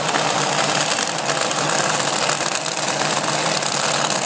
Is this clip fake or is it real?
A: fake